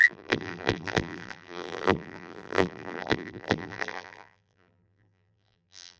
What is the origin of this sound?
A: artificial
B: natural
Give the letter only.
A